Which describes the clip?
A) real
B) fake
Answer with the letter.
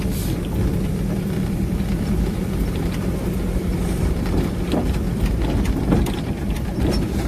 B